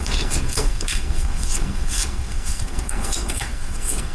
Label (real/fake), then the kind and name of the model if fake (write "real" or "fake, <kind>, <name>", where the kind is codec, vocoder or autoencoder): fake, codec, SNAC